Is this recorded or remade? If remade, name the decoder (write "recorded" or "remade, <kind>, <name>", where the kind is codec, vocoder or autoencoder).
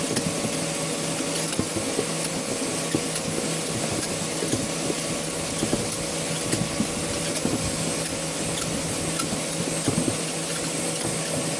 recorded